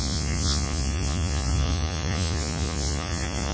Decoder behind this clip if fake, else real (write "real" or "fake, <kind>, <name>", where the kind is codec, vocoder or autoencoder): fake, vocoder, Vocos